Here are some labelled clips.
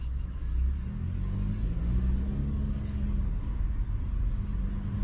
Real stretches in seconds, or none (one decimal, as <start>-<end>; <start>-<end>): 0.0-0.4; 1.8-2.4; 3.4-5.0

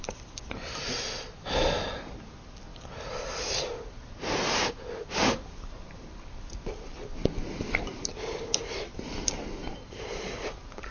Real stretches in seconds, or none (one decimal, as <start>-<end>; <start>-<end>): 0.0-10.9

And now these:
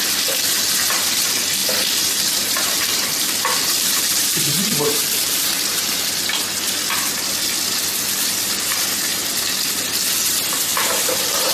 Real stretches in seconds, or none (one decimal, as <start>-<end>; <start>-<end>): 0.0-1.6; 6.1-10.7